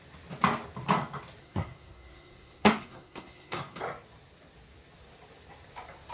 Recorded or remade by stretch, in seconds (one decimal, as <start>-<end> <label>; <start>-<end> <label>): 0.0-1.4 recorded; 1.4-3.8 remade; 3.8-6.1 recorded